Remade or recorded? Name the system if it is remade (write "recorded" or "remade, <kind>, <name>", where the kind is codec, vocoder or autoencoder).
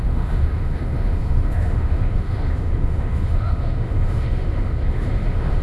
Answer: remade, autoencoder, DAC-VAE